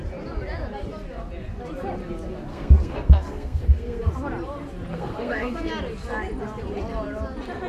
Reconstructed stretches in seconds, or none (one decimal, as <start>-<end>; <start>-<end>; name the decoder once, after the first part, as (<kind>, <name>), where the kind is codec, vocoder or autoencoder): 2.5-4.0 (codec, SNAC); 4.9-5.7